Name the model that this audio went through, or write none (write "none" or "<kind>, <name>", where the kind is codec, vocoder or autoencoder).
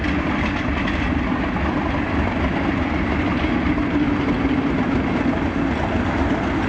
none